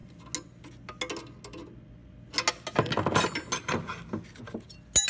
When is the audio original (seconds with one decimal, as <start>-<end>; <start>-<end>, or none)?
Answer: 0.0-5.1

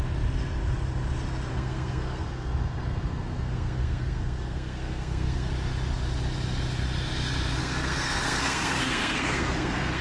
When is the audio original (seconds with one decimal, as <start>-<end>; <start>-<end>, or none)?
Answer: 0.0-1.5; 5.5-7.6

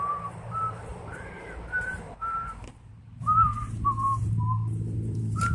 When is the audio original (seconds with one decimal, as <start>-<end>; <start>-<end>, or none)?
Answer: none